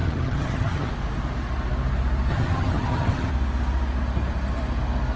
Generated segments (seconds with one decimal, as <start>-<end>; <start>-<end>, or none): 0.0-0.9; 2.3-3.3